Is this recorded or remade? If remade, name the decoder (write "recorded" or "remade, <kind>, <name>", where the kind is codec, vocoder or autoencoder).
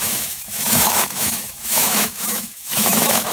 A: remade, autoencoder, DAC-VAE